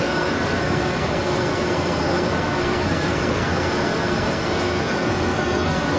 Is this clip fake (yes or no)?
yes